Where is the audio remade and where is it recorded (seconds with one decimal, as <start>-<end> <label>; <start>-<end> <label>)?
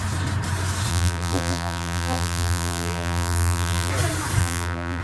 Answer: 0.0-0.9 recorded; 0.9-3.9 remade; 3.9-4.4 recorded; 4.4-5.0 remade